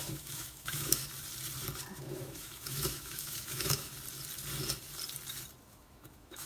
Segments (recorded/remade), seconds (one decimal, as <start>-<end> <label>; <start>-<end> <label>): 0.0-1.0 remade; 1.0-1.9 recorded; 1.9-3.9 remade; 3.9-5.6 recorded; 5.6-6.5 remade